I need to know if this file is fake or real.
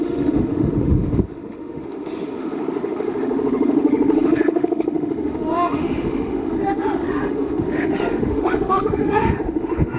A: fake